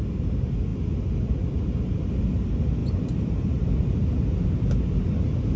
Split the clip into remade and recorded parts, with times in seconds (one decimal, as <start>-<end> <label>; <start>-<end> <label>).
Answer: 0.0-5.6 recorded